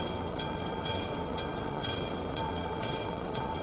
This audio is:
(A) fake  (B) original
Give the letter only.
A